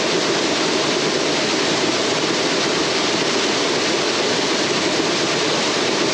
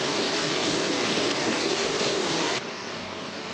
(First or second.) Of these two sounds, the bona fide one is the first